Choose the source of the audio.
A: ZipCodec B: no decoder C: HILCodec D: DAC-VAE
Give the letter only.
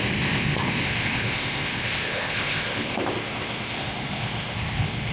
A